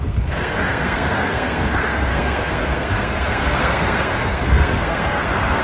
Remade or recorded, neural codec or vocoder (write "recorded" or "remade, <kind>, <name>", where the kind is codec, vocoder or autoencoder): remade, codec, SNAC